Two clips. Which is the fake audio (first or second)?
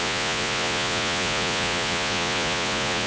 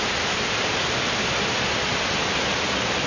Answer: first